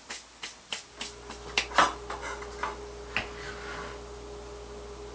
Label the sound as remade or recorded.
recorded